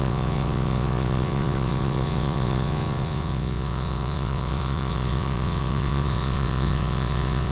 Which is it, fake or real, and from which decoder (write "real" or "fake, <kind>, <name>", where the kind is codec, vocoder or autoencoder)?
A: fake, vocoder, WaveNeXt